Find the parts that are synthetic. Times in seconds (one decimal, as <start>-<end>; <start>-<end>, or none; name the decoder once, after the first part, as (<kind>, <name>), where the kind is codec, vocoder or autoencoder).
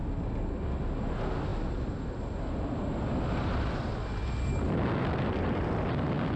none